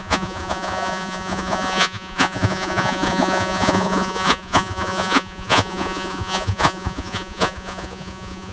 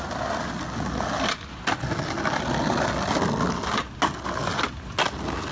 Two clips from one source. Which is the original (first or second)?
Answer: second